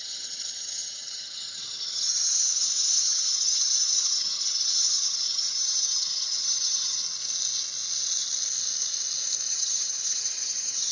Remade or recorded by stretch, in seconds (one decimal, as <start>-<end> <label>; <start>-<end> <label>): 0.0-7.0 remade; 7.0-9.5 recorded; 9.5-10.9 remade